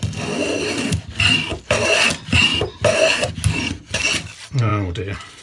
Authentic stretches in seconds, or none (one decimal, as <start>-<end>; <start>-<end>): 0.0-2.5; 3.3-4.7